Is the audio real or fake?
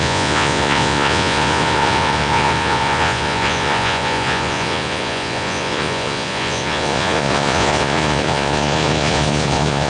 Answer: fake